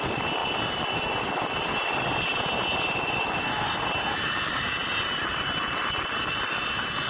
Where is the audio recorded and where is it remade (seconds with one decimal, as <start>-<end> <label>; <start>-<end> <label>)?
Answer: 0.0-7.1 recorded